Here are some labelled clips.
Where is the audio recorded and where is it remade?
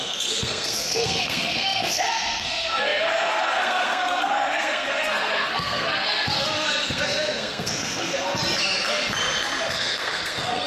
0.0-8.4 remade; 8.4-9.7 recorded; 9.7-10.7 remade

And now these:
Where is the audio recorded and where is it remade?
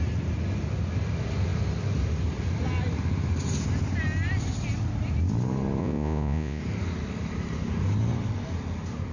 0.0-5.8 recorded; 5.8-6.6 remade; 6.6-9.1 recorded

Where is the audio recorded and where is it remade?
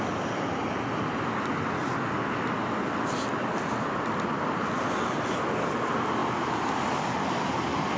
0.0-8.0 recorded